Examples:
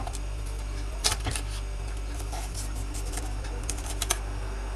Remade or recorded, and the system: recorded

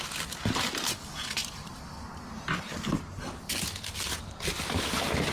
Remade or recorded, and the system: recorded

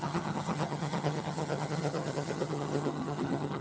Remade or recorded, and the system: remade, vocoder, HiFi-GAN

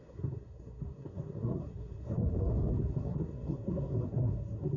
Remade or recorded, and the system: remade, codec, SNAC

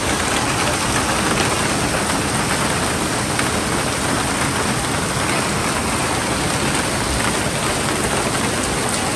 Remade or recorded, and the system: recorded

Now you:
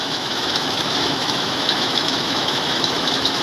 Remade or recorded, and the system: remade, autoencoder, DAC-VAE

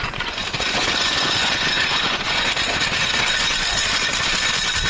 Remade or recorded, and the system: remade, vocoder, Vocos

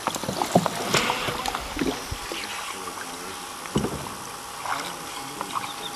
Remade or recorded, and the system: recorded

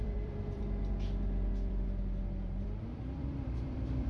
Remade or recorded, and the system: remade, vocoder, BigVGAN v2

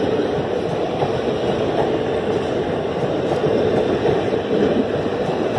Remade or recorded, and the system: recorded